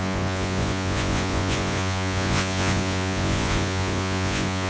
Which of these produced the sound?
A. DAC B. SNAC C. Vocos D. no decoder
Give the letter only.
C